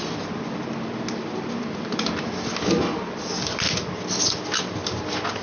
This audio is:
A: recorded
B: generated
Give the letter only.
A